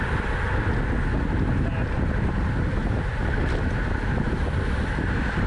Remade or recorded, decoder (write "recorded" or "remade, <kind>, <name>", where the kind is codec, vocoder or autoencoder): recorded